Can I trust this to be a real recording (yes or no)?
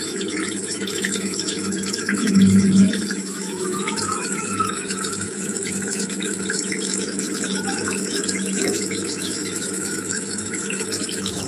no